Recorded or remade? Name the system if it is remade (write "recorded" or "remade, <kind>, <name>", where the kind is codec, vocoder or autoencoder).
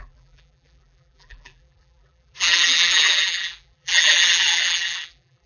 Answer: remade, vocoder, BigVGAN v2